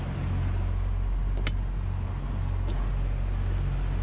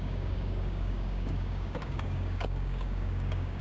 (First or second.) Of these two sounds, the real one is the first